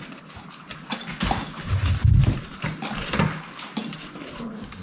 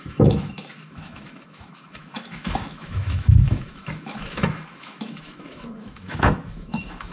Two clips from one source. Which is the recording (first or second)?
first